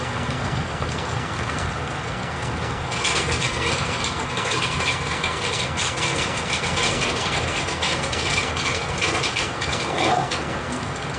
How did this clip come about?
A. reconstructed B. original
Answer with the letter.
A